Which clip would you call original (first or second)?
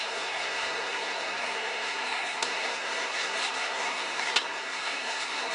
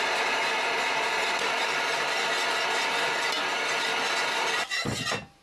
second